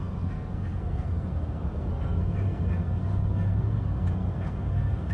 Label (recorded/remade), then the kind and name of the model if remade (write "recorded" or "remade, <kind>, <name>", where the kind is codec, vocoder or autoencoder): remade, codec, SNAC